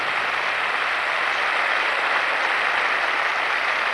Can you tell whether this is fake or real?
real